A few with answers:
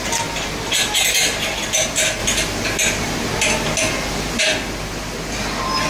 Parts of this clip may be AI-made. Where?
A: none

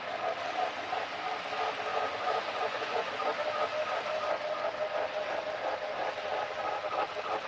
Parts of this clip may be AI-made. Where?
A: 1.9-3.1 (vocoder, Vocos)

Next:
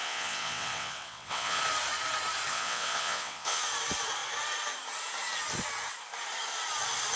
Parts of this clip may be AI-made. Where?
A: 0.0-1.6 (vocoder, WaveNeXt); 2.5-3.6

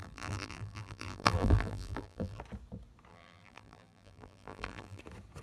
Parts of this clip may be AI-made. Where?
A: 0.0-2.4 (vocoder, BigVGAN v2); 3.1-5.0